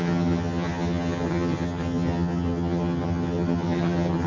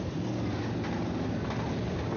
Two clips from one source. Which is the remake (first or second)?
first